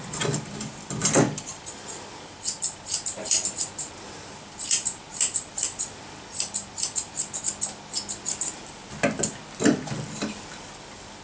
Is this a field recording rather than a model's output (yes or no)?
yes